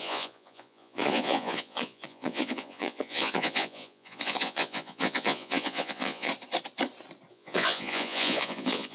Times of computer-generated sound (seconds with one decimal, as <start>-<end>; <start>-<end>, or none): 0.0-6.3; 7.3-8.9